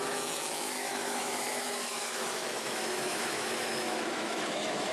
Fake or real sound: fake